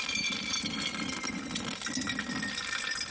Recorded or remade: recorded